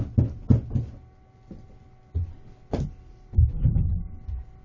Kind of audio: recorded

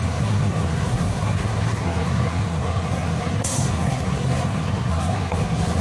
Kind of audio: remade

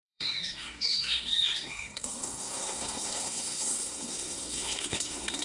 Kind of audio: remade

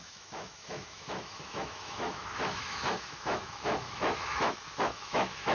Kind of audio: remade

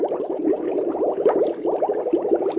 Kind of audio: recorded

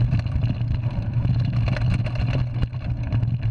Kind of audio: recorded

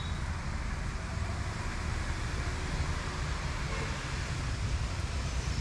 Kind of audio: recorded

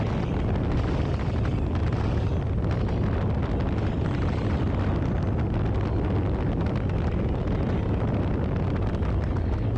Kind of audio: recorded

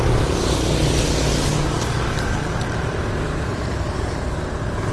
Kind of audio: recorded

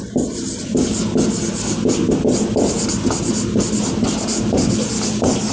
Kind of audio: recorded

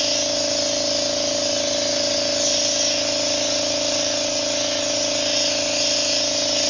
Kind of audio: recorded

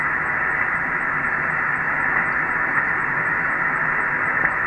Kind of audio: recorded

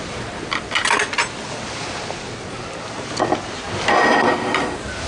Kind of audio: recorded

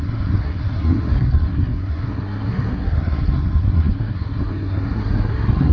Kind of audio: remade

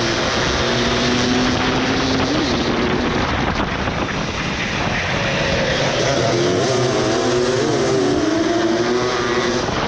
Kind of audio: recorded